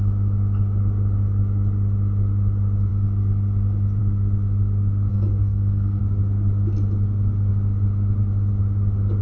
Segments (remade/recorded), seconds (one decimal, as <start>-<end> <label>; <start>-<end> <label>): 0.0-5.1 recorded; 5.1-6.0 remade; 6.0-9.2 recorded